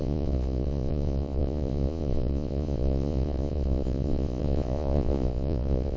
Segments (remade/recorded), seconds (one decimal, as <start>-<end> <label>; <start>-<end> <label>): 0.0-6.0 remade